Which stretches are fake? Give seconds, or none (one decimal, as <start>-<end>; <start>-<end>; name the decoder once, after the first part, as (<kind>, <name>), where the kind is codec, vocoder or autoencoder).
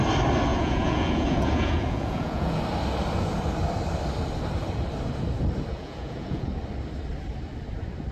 0.5-2.6 (vocoder, Vocos); 5.7-6.5